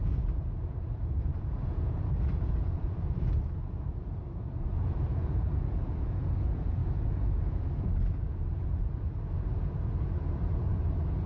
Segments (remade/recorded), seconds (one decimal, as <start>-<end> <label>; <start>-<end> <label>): 0.0-11.3 remade